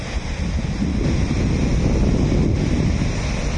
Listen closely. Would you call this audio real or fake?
real